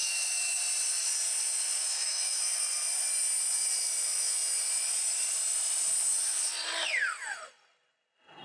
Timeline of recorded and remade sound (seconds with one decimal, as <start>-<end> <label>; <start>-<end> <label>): 0.0-0.6 remade; 0.6-1.8 recorded; 1.8-2.4 remade; 2.4-8.4 recorded